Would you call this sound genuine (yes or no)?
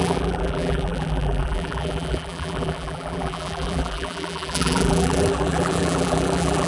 no